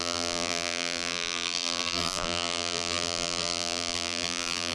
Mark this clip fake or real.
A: fake